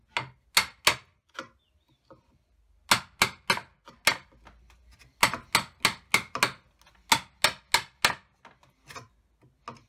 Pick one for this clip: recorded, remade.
recorded